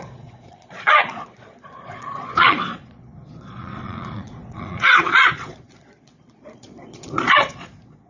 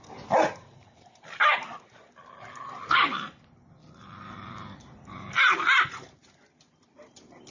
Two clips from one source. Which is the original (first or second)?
second